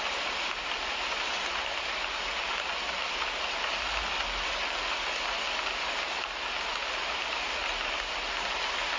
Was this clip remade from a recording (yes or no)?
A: no